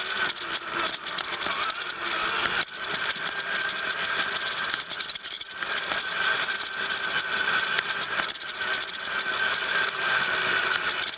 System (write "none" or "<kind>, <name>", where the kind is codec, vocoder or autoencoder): none